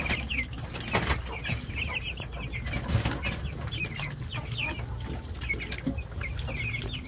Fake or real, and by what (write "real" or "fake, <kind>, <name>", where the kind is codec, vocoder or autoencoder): real